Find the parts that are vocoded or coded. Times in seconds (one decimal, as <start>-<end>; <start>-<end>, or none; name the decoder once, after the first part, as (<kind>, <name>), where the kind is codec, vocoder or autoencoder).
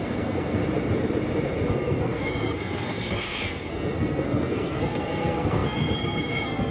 0.0-0.6 (codec, SNAC); 1.7-6.7